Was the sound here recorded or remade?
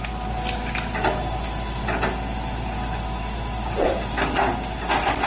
recorded